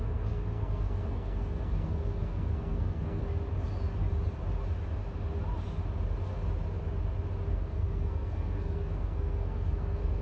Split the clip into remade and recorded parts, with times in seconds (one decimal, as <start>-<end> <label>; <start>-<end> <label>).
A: 0.0-3.2 remade; 3.2-7.5 recorded; 7.5-10.2 remade